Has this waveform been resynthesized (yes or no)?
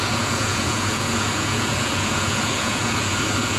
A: yes